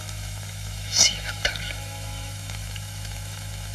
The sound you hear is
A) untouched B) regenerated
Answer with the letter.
B